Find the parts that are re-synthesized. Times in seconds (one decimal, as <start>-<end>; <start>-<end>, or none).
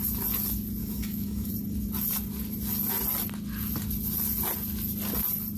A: 0.8-1.5